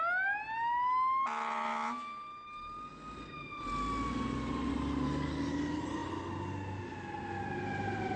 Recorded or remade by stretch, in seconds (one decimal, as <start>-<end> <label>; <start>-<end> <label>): 0.0-8.2 recorded